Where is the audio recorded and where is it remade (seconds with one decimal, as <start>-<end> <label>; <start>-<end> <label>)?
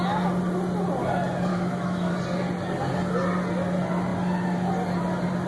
0.0-1.5 recorded; 1.5-2.1 remade; 2.1-5.5 recorded